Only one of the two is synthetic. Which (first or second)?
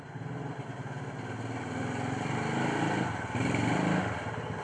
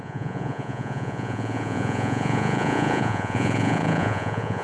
second